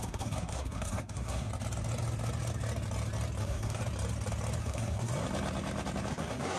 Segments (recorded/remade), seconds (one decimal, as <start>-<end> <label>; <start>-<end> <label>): 0.0-1.5 remade; 1.5-3.4 recorded; 3.4-3.8 remade; 3.8-4.6 recorded; 4.6-5.1 remade; 5.1-6.1 recorded; 6.1-6.6 remade